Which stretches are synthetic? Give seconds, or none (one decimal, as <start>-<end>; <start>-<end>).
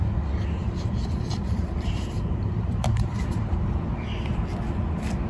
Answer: 0.6-3.8